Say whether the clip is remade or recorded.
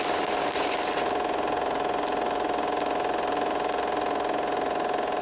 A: recorded